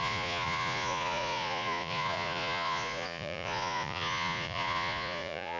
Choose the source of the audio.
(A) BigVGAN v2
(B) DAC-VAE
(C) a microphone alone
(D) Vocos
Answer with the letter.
D